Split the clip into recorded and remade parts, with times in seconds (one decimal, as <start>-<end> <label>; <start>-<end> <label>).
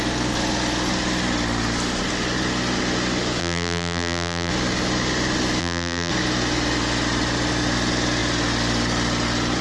0.0-3.4 recorded; 3.4-4.5 remade; 4.5-5.6 recorded; 5.6-6.1 remade; 6.1-9.6 recorded